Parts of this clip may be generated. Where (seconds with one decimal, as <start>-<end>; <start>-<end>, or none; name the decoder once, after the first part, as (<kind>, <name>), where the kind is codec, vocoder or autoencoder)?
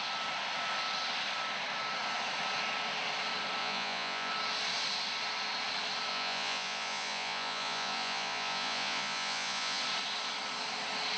3.6-4.3 (vocoder, Vocos); 6.1-9.8